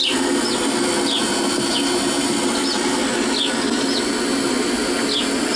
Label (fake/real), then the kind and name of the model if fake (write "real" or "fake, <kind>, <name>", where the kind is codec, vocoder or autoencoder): real